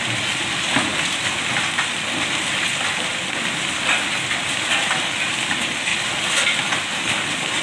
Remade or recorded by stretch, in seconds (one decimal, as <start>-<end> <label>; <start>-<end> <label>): 0.0-7.6 recorded